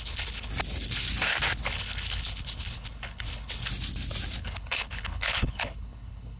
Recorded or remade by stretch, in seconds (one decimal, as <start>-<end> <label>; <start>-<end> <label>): 0.0-0.5 remade; 0.5-1.6 recorded; 1.6-3.7 remade; 3.7-4.4 recorded; 4.4-6.4 remade